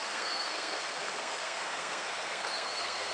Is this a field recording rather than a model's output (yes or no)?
no